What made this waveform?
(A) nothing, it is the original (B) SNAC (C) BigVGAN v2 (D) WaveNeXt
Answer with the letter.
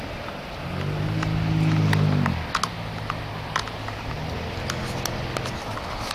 A